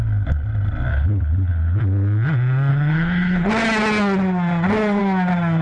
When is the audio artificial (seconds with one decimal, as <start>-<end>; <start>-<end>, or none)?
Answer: 0.9-1.8; 2.7-3.5